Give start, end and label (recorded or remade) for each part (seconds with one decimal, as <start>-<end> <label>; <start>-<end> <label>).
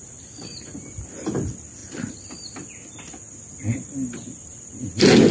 0.0-5.3 recorded